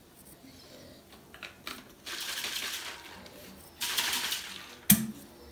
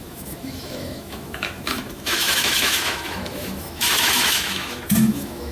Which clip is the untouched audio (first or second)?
first